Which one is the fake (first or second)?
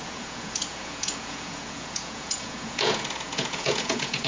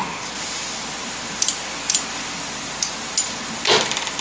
first